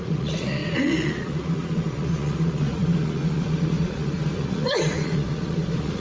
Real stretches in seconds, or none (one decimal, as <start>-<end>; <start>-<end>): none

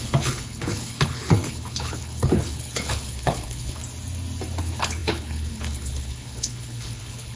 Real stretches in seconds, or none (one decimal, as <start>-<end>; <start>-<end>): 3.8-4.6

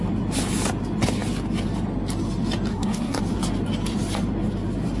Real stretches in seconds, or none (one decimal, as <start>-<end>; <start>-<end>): 0.0-2.7; 3.2-5.0

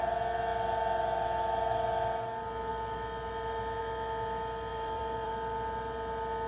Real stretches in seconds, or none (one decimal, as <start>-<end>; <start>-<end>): 0.0-4.7; 5.3-6.5

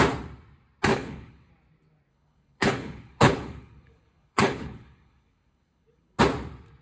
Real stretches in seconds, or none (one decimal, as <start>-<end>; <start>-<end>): 0.0-0.9; 1.5-2.1; 6.2-6.8